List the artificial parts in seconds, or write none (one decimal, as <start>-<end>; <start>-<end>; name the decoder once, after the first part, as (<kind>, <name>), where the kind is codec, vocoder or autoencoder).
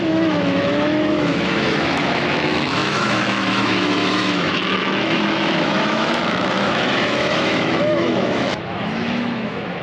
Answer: 0.0-9.8 (autoencoder, DAC-VAE)